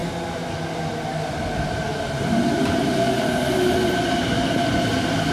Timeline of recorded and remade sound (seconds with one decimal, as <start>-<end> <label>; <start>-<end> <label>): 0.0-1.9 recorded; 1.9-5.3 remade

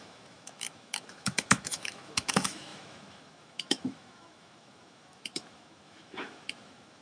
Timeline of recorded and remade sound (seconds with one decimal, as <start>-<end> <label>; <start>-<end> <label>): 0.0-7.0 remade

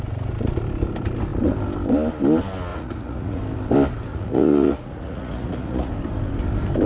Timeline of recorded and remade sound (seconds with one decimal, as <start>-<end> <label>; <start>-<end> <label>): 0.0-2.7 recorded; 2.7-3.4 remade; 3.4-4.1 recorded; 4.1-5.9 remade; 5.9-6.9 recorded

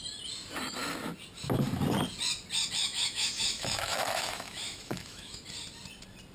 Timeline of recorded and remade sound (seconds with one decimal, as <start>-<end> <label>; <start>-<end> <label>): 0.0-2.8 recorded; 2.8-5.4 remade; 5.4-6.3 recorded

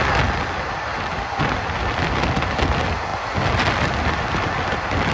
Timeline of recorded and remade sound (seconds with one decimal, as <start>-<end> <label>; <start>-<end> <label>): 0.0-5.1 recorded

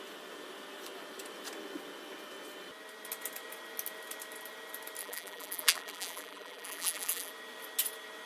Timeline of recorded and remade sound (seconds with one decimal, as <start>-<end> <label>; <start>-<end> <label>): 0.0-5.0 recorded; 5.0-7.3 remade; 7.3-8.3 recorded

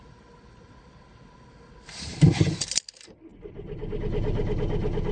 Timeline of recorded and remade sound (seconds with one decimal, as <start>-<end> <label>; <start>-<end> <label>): 0.0-5.1 recorded